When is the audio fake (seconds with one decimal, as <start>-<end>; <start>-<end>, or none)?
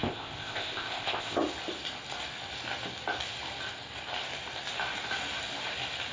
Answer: 0.0-1.4